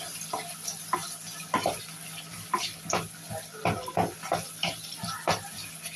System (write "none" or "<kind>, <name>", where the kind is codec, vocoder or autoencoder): none